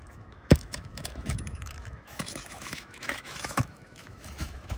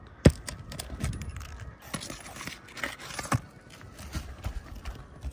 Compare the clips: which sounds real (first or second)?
second